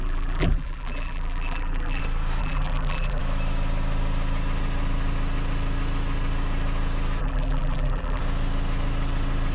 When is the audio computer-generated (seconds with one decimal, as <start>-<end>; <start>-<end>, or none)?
0.0-2.0; 2.4-3.2; 7.2-8.2